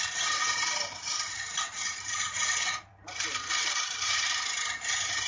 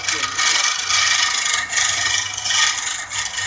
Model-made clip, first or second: first